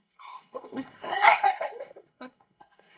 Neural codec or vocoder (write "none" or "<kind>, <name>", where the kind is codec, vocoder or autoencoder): codec, SNAC